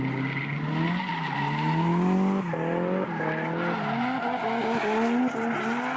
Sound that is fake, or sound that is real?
real